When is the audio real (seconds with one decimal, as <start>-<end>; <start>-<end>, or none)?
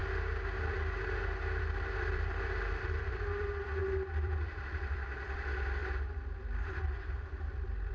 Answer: 0.0-1.6; 5.8-6.4